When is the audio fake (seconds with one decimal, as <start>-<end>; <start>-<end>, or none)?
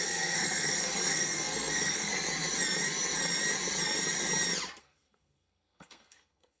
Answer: 0.0-2.1; 4.8-6.6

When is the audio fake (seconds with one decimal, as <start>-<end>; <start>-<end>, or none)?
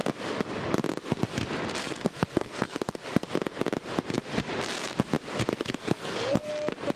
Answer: 1.8-3.3; 5.5-6.5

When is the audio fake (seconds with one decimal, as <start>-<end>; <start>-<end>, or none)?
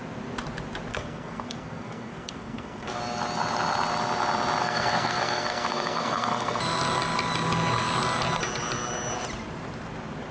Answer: 0.9-3.0; 4.6-6.6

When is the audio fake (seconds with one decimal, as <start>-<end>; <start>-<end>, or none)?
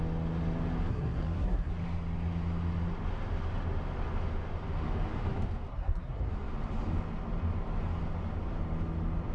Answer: 0.9-1.7; 5.7-6.3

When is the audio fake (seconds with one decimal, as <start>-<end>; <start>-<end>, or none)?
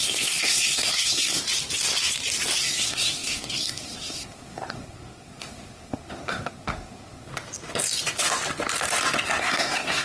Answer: 0.0-1.4; 2.6-7.3; 9.4-10.0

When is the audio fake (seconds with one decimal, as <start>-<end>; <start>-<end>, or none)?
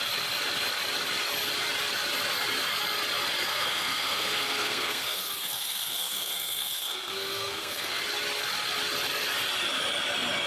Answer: 3.5-8.0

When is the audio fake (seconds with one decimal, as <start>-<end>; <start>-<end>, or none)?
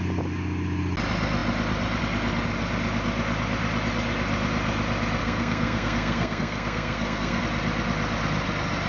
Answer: 5.2-7.4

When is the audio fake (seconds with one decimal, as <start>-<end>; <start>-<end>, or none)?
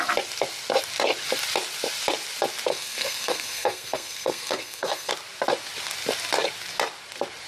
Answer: 2.7-5.1